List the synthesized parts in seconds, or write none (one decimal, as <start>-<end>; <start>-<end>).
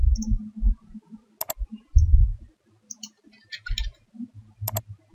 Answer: none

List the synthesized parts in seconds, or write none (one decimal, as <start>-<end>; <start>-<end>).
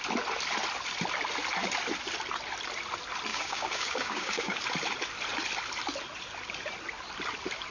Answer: 3.3-4.6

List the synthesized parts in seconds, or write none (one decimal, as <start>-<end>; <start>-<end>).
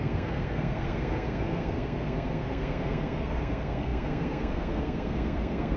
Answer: 0.0-5.8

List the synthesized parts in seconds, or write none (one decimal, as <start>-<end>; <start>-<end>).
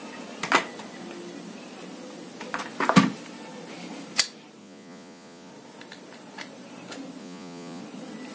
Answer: 4.6-5.5; 7.2-7.8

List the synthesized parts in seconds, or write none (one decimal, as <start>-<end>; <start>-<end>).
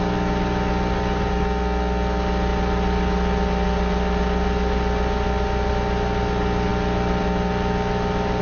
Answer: none